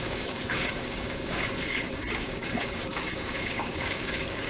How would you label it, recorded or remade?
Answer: remade